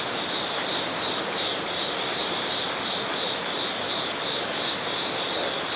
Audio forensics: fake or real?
real